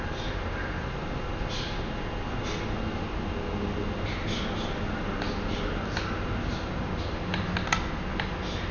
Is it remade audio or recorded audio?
recorded